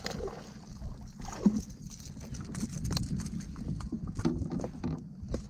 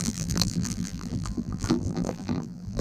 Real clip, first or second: first